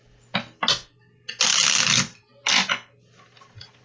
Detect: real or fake real